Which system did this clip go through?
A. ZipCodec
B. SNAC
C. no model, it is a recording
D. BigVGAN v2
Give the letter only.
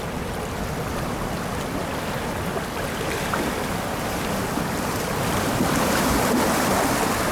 C